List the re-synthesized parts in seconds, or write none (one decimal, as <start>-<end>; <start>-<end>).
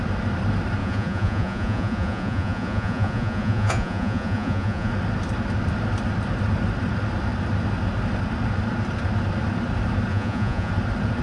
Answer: 0.8-4.9; 10.1-10.7